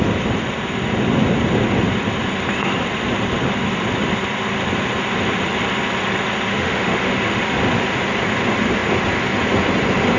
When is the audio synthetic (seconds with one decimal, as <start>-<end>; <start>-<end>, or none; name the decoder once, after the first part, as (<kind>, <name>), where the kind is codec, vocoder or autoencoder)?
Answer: 6.5-7.4 (autoencoder, DAC-VAE)